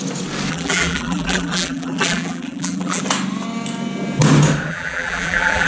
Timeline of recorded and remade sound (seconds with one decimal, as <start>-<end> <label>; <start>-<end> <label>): 0.0-0.5 recorded; 0.5-3.0 remade; 3.0-4.7 recorded; 4.7-5.7 remade